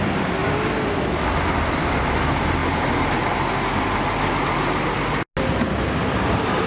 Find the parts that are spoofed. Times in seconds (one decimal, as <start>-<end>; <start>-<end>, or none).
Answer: 0.0-0.4; 1.6-2.6; 6.0-6.7